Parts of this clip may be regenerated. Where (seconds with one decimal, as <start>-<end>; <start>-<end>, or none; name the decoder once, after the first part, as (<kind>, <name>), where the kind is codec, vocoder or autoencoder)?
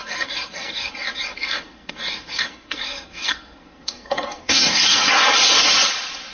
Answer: 0.0-0.9 (codec, SNAC); 1.3-5.1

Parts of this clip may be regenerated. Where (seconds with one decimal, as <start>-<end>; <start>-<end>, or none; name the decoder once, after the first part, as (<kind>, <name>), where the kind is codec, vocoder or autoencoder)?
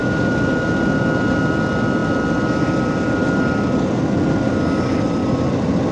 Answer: none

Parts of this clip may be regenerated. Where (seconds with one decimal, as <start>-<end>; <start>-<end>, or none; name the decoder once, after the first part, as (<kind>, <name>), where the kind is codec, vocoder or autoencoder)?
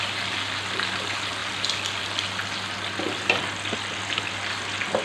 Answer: none